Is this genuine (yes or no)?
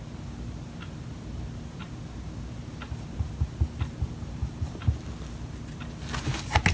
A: yes